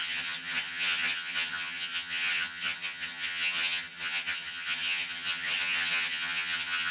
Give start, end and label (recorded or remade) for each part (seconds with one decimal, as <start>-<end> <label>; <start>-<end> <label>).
0.0-6.9 remade